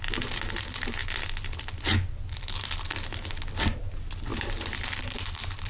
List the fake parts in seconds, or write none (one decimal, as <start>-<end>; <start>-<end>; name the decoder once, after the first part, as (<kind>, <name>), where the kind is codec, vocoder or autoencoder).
none